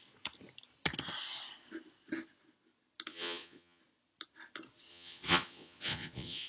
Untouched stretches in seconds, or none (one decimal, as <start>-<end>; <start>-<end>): 0.0-3.1; 3.8-4.9